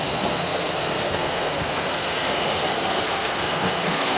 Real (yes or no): no